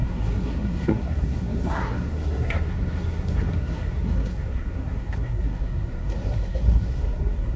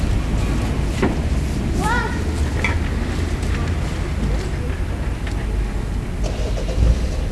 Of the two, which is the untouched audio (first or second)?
second